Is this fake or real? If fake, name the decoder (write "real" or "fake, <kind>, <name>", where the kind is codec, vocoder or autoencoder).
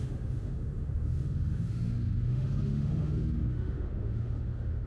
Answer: fake, autoencoder, DAC-VAE